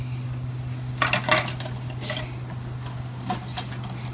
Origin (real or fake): real